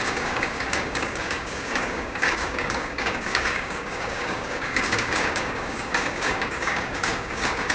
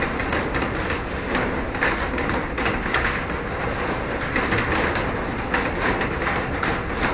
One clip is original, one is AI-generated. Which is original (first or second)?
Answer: second